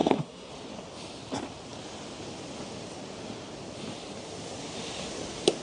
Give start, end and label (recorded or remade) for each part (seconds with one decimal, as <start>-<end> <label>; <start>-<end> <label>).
0.0-0.5 remade; 0.5-5.6 recorded